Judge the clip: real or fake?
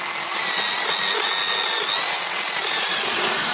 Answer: real